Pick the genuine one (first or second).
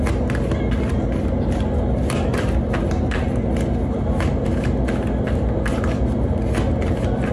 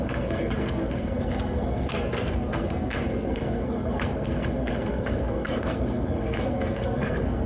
first